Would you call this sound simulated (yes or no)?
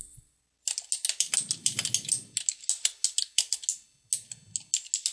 no